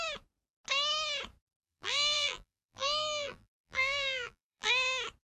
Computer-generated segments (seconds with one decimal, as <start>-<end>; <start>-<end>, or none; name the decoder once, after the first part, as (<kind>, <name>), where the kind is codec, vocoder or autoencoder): 1.6-4.7 (vocoder, BigVGAN v2)